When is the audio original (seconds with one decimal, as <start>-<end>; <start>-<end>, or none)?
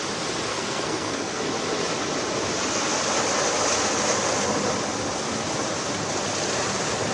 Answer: 0.0-0.5; 1.4-7.1